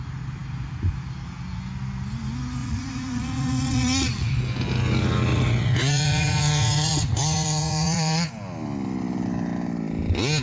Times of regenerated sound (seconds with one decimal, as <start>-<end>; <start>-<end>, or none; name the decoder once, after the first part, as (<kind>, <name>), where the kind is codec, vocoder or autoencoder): 2.6-4.4 (vocoder, Vocos); 5.3-8.3